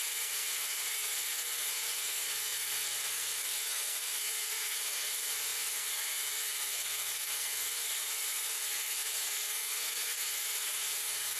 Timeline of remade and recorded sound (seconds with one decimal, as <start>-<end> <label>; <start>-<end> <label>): 0.0-11.4 remade

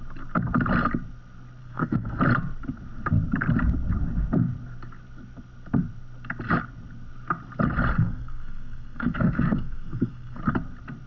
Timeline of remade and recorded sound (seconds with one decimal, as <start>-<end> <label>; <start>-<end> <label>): 0.0-1.6 recorded; 1.6-2.2 remade; 2.2-8.0 recorded; 8.0-10.4 remade; 10.4-11.1 recorded